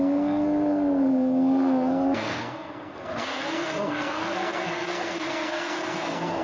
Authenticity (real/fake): fake